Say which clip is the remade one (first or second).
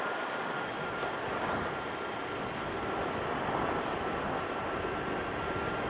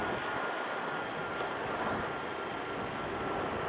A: first